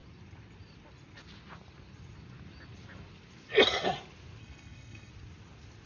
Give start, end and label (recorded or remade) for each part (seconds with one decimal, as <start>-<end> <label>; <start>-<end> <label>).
0.0-4.4 recorded; 4.4-5.1 remade; 5.1-5.9 recorded